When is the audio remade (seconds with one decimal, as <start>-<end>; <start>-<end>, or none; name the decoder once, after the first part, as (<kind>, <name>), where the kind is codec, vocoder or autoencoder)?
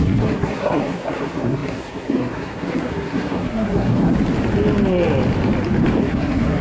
0.0-4.0 (codec, SNAC); 6.0-6.6